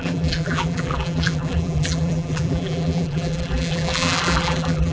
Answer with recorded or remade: remade